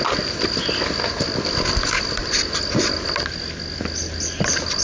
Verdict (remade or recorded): recorded